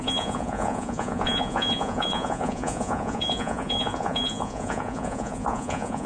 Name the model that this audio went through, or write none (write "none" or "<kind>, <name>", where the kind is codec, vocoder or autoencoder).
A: vocoder, Vocos